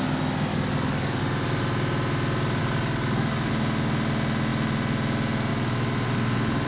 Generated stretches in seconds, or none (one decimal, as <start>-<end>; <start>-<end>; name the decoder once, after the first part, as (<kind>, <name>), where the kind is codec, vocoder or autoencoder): 0.5-1.2 (codec, DAC); 2.6-3.5